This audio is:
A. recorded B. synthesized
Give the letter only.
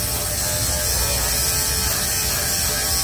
A